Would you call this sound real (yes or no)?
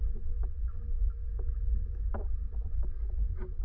yes